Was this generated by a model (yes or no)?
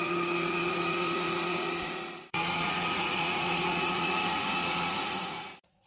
yes